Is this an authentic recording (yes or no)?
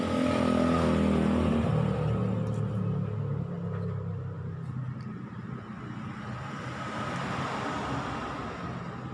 yes